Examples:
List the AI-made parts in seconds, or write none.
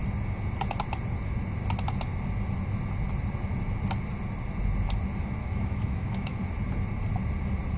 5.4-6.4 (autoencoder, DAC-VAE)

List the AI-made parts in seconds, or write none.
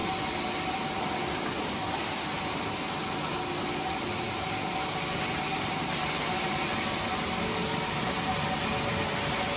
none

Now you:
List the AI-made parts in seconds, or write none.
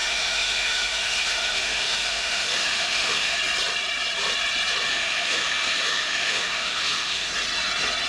0.0-3.4 (autoencoder, DAC-VAE); 4.9-7.3